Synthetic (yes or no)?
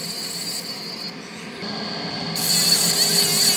no